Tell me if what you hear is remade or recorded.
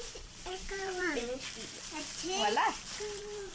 remade